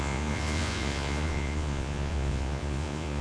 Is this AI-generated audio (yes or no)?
yes